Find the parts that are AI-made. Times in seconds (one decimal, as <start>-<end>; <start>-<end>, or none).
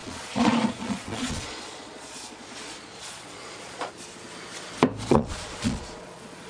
0.0-3.9; 5.1-6.5